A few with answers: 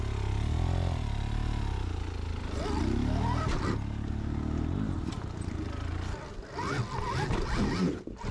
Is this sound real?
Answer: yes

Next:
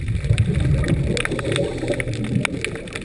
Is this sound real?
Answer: yes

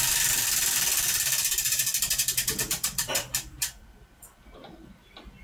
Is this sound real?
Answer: no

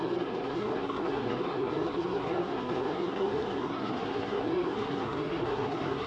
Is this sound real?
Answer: no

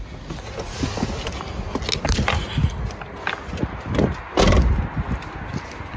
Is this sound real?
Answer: yes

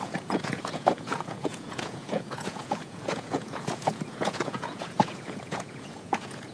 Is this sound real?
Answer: no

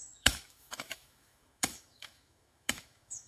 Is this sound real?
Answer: no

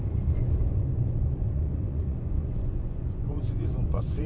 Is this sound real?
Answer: no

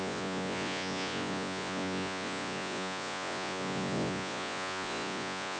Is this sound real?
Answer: no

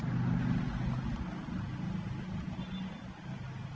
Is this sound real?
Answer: yes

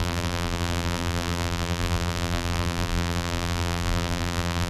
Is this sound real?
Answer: no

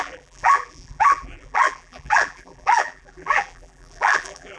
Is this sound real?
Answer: no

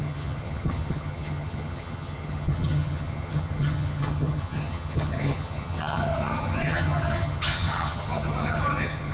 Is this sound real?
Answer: no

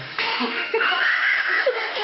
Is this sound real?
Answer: no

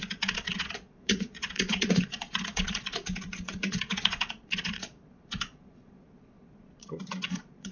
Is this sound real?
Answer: no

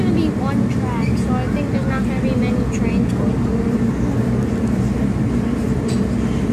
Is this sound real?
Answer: yes